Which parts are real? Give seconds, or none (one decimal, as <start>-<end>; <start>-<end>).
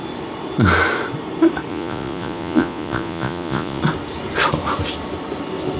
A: 0.0-1.7; 3.8-5.8